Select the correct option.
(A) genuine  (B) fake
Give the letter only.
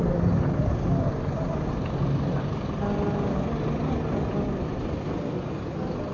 A